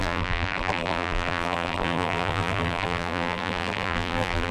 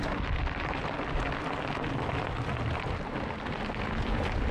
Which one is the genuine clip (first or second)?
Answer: second